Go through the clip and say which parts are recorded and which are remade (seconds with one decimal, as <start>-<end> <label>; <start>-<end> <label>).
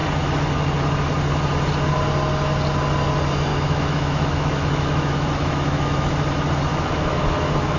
0.0-3.5 recorded; 3.5-6.1 remade; 6.1-6.7 recorded; 6.7-7.8 remade